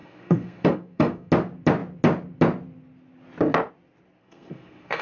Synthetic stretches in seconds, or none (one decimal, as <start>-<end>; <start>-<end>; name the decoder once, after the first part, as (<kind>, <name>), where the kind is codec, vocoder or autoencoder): 0.0-1.3 (codec, SNAC); 4.2-5.0